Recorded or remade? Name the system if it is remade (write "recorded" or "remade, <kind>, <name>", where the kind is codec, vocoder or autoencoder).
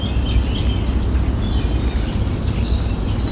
recorded